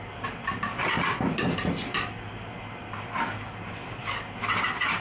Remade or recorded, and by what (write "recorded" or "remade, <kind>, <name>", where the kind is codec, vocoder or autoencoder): recorded